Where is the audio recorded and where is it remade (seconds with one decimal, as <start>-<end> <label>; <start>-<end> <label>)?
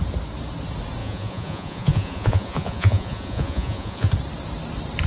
0.0-1.0 recorded; 1.0-4.1 remade; 4.1-5.1 recorded